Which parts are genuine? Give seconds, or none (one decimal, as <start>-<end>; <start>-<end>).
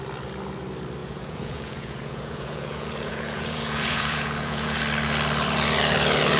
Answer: 0.0-1.0; 4.8-6.4